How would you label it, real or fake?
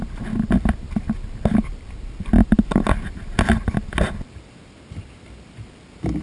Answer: real